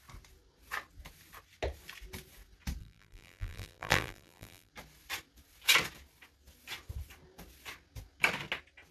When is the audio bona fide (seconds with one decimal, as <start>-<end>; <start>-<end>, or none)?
0.0-2.8; 4.7-8.9